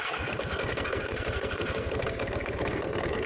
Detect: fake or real fake